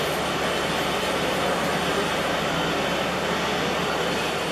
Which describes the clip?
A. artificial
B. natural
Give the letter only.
B